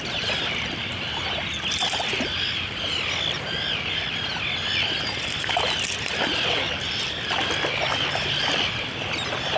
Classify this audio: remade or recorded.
recorded